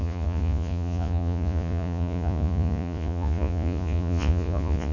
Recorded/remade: remade